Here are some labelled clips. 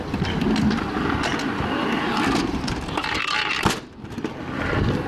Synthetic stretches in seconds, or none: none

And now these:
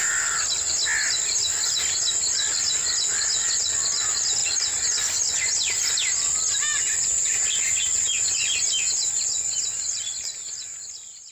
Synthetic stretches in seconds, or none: none

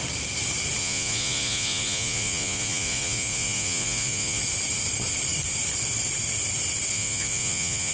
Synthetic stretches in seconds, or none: 0.8-4.4 (vocoder, Vocos); 6.9-7.9

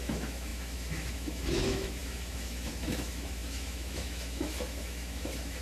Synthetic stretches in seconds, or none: 0.0-5.6 (autoencoder, DAC-VAE)